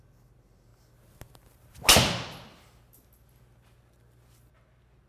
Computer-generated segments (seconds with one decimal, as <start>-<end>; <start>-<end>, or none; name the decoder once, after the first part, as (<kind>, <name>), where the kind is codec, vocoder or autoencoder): 0.0-0.7 (vocoder, BigVGAN v2); 3.8-5.1